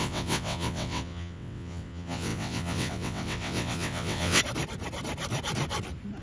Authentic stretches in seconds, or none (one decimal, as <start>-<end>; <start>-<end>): 4.4-6.2